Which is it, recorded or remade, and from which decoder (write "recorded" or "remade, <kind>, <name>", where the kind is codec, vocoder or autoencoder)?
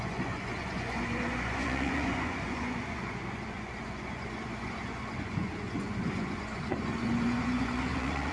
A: remade, vocoder, Vocos